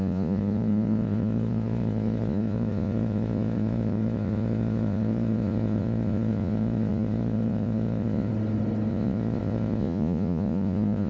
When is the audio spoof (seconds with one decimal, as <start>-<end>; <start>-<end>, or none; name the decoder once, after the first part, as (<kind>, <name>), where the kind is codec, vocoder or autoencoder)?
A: 0.0-8.3 (vocoder, Vocos); 8.9-11.1